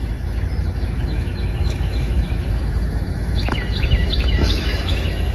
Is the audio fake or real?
fake